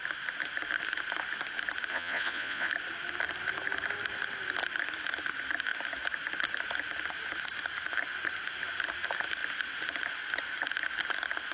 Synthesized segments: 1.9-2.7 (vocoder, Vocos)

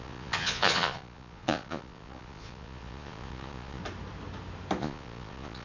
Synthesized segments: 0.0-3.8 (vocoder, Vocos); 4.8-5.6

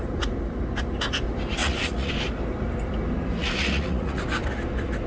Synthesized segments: 1.6-2.1 (vocoder, Vocos); 3.4-4.2

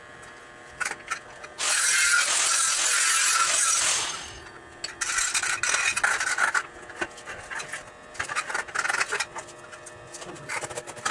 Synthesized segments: none